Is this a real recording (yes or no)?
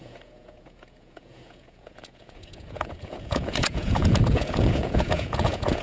no